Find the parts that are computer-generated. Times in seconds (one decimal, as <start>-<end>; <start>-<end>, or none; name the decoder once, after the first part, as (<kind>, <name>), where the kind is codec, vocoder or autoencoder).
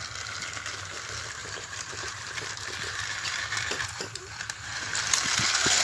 1.4-4.9 (vocoder, BigVGAN v2)